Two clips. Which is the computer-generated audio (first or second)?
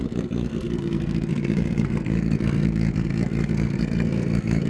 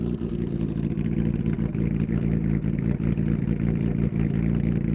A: first